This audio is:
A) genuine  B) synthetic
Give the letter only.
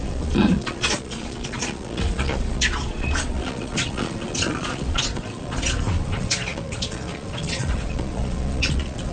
B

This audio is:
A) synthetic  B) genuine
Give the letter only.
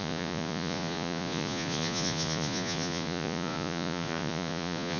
A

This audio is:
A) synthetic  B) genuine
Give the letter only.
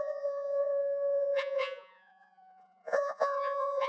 A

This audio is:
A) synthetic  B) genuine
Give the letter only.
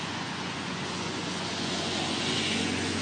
A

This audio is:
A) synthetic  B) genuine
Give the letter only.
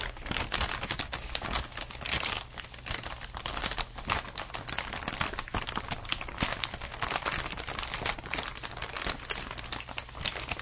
B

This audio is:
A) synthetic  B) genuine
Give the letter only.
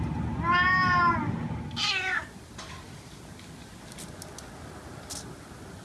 B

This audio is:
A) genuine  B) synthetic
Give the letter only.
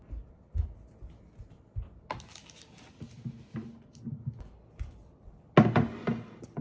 A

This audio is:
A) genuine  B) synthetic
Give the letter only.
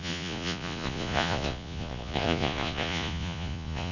B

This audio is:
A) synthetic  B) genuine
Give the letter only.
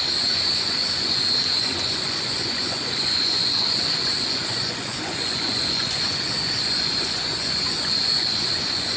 A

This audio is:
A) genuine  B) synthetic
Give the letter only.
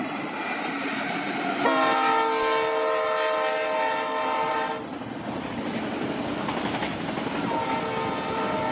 A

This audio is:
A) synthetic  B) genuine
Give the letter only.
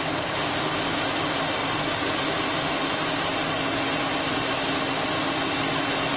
B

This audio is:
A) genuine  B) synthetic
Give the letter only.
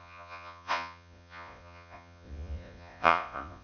B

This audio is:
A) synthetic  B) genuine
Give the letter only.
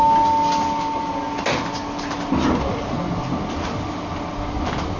B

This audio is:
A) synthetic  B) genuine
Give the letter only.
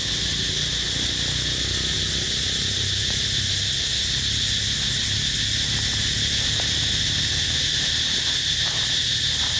B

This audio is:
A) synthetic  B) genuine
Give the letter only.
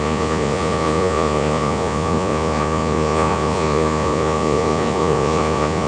A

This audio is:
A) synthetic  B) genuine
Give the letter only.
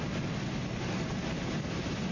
B